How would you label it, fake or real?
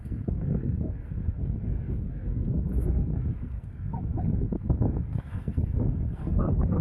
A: fake